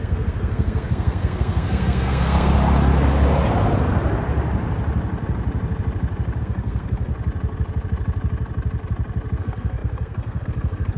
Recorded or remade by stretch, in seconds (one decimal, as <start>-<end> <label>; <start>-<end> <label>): 0.0-2.5 remade; 2.5-6.4 recorded; 6.4-7.1 remade; 7.1-9.4 recorded; 9.4-11.0 remade